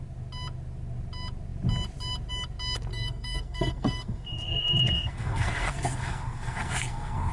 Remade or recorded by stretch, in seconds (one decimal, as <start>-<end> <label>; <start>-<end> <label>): 0.0-2.9 recorded; 2.9-7.3 remade